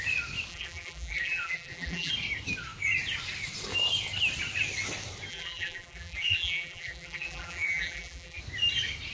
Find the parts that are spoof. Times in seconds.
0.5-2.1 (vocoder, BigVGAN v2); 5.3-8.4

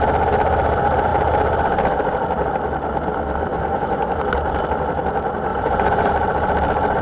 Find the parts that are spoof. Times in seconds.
3.5-4.2 (vocoder, Vocos); 5.5-6.1

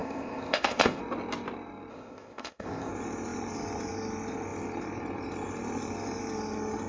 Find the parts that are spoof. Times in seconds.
0.0-1.0 (codec, ZipCodec); 1.9-2.9

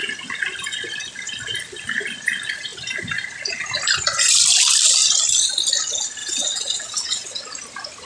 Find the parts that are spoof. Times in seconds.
6.2-7.4 (vocoder, WaveNeXt)